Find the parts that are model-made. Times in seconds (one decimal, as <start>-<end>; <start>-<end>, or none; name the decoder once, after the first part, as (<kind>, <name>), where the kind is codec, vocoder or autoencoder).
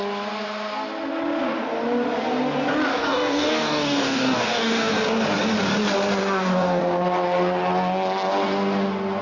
2.9-4.9 (codec, DAC); 6.2-6.8